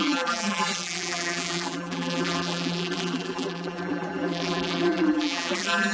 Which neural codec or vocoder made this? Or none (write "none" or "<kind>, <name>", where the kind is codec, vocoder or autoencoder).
vocoder, BigVGAN v2